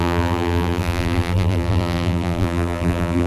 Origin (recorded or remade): remade